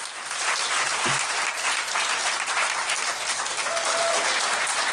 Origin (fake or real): real